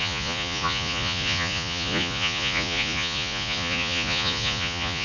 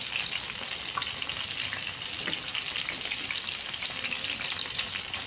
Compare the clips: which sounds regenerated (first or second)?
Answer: first